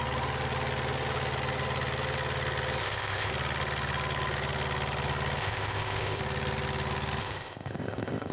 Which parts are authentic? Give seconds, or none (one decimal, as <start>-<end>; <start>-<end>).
0.0-2.8; 3.3-5.4; 6.2-7.2